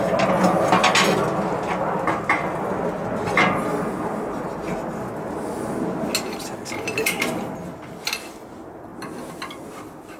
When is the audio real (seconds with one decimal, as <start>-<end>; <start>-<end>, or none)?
0.0-10.2